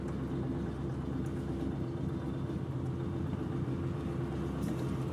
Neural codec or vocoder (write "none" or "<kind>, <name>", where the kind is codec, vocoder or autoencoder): none